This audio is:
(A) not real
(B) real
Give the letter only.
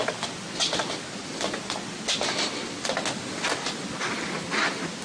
B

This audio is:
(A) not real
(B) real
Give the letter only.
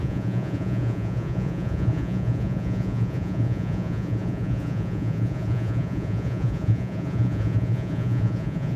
A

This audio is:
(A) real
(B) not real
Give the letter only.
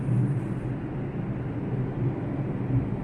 A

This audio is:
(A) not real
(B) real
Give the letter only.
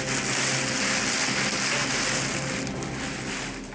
B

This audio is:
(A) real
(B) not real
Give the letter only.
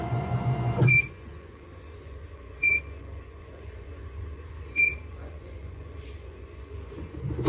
B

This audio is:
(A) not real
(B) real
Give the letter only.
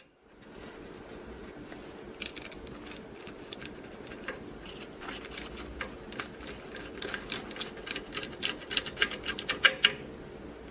B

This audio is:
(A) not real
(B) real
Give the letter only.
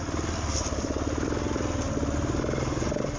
B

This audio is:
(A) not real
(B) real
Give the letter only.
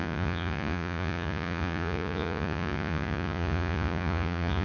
A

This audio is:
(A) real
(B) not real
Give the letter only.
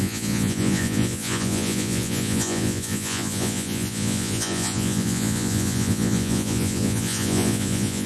B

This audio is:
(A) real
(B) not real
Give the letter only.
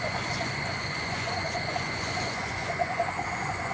B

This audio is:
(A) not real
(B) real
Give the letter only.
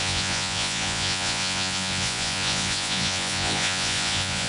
A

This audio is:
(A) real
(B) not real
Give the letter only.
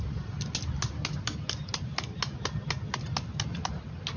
A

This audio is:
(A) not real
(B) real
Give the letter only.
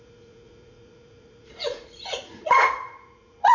A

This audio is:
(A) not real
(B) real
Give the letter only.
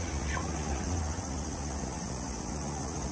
A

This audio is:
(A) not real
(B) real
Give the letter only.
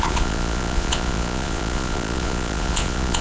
A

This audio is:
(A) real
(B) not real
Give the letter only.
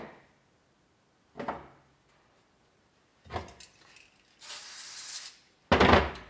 A